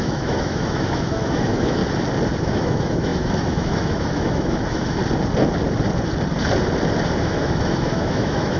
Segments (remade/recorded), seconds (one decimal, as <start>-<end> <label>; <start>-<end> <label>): 0.0-1.8 remade; 1.8-2.4 recorded; 2.4-5.0 remade; 5.0-7.2 recorded; 7.2-8.6 remade